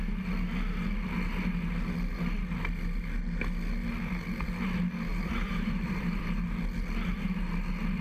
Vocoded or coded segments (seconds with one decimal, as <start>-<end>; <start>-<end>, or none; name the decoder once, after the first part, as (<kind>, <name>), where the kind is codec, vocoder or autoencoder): 5.1-6.2 (vocoder, BigVGAN v2)